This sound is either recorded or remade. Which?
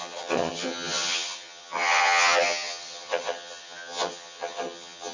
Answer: remade